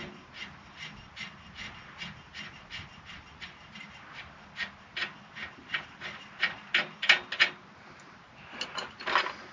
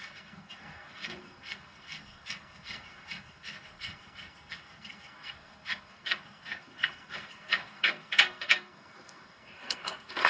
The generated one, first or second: second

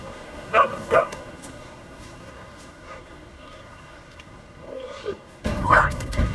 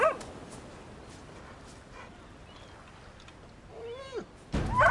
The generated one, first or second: first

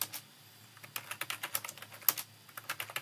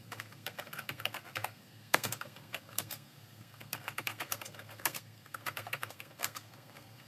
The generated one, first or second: second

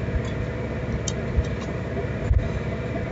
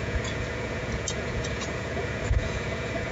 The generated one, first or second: second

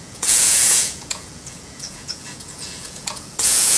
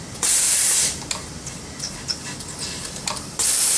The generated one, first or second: first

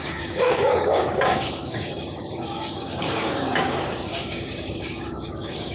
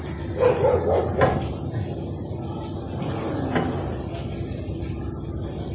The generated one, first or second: first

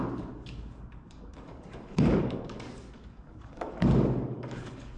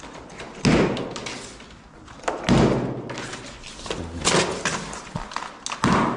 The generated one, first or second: first